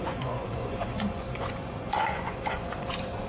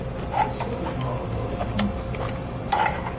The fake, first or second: first